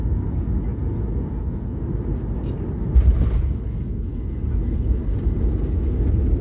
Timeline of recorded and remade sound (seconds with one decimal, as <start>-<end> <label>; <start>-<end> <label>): 0.0-6.4 recorded